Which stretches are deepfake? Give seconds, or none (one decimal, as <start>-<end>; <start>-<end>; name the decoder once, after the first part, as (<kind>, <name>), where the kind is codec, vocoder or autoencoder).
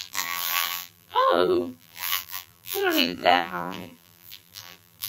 0.0-5.1 (vocoder, BigVGAN v2)